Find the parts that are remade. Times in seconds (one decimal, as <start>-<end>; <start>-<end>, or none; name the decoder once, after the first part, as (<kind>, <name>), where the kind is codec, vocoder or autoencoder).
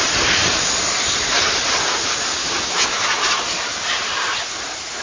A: 2.4-3.4 (autoencoder, DAC-VAE)